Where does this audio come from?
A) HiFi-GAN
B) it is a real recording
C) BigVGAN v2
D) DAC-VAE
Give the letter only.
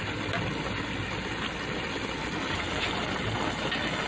B